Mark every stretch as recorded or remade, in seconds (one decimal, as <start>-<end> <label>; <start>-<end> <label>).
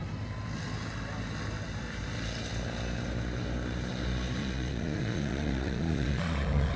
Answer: 0.0-4.4 recorded; 4.4-6.8 remade